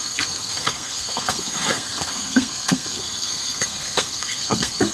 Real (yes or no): no